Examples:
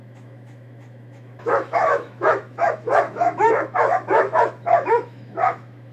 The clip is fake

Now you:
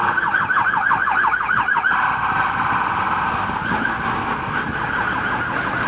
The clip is real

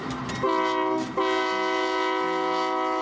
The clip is real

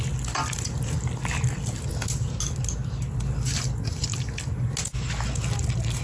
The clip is real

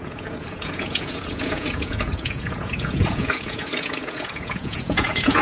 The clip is fake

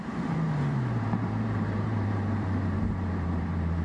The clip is fake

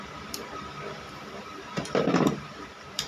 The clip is fake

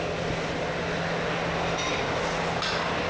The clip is real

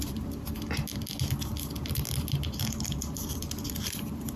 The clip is real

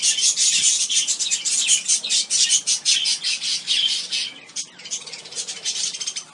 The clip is real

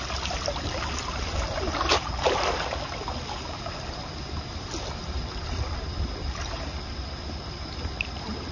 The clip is real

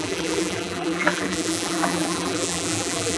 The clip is fake